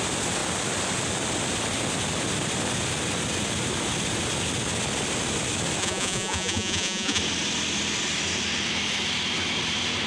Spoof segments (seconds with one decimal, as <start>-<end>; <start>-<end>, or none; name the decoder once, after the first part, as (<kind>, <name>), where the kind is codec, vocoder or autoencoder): 5.8-7.2 (vocoder, Vocos)